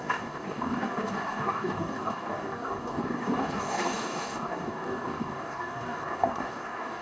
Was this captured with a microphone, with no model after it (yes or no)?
no